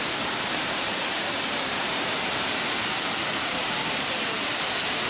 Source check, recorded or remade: remade